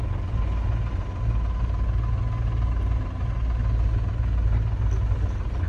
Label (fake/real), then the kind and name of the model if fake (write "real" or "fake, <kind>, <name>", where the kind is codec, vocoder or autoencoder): real